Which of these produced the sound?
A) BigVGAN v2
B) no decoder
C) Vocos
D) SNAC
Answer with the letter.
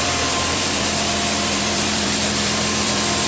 A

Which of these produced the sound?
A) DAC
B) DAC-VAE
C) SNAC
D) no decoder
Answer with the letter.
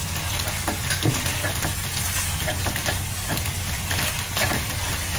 D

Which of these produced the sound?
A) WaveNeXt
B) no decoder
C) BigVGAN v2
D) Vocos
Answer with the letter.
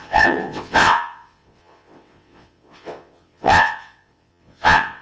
A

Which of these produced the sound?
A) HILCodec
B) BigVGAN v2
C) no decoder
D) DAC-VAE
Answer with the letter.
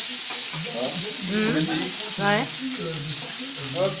C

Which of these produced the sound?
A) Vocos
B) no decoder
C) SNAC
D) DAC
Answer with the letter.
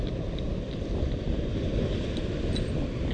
B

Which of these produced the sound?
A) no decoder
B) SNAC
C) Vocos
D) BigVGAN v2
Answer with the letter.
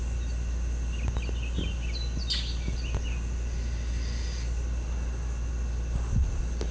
A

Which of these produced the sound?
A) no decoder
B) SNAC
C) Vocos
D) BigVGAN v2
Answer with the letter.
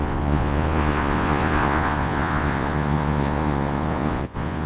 C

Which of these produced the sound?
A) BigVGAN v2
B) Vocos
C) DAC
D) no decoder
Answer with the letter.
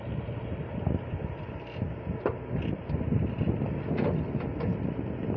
D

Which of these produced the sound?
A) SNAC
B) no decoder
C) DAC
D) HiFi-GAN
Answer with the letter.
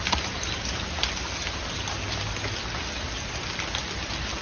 B